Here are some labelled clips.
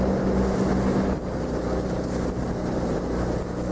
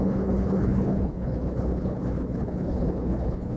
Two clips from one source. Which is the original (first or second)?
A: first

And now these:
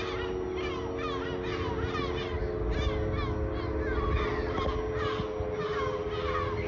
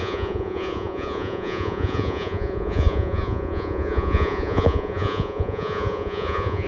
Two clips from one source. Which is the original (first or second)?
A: first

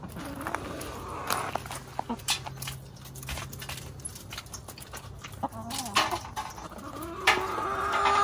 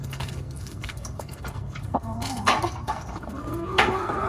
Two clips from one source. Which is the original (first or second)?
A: first